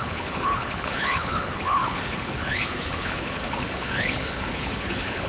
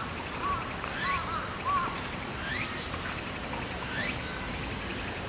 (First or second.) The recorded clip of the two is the second